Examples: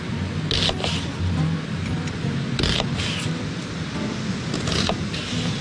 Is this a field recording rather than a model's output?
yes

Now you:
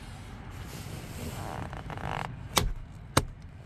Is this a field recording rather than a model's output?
yes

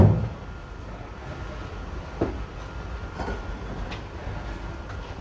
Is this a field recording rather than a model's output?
yes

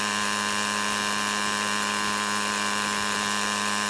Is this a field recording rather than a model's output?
yes